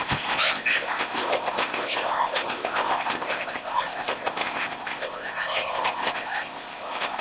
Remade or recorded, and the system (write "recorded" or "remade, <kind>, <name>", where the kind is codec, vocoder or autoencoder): remade, codec, ZipCodec